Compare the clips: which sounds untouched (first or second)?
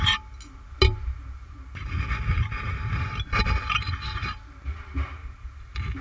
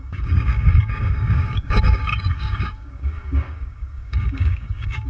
first